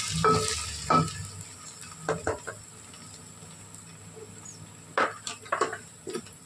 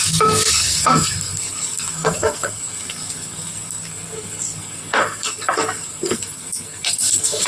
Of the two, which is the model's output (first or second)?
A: second